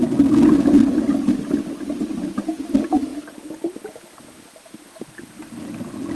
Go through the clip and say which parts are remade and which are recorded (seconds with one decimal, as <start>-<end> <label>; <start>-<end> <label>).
0.0-6.2 recorded